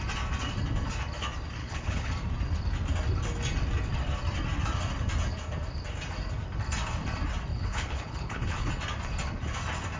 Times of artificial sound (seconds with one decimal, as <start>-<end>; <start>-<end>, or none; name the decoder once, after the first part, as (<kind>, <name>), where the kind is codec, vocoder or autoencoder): 1.6-2.1 (codec, HILCodec); 7.5-8.7